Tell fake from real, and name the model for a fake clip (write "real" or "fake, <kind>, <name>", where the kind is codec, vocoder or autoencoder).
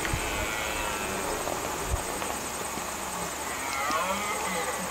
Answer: real